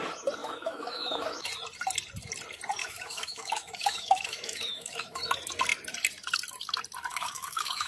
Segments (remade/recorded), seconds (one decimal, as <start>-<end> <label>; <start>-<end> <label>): 0.0-0.4 recorded; 0.4-1.5 remade; 1.5-2.8 recorded; 2.8-5.2 remade; 5.2-7.1 recorded; 7.1-7.9 remade